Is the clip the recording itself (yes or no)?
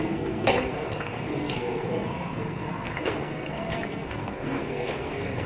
no